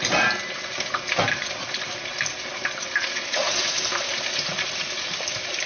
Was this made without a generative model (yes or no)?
no